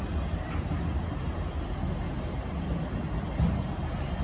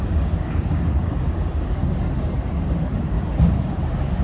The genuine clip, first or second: first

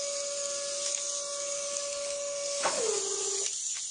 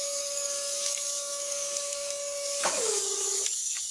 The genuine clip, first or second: first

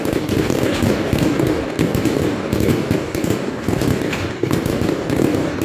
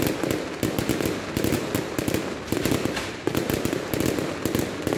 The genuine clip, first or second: second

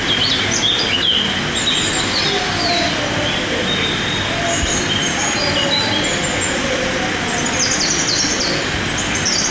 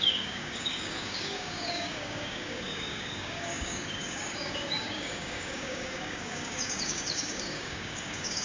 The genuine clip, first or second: first